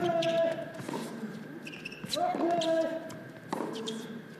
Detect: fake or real fake